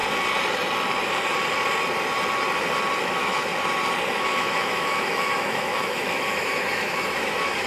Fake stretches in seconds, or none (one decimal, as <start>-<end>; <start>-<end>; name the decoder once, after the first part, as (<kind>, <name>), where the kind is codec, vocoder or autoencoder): 3.0-3.5 (autoencoder, DAC-VAE); 4.2-7.7